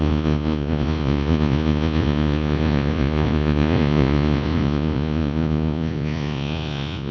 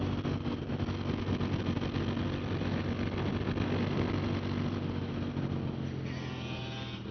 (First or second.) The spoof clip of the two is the first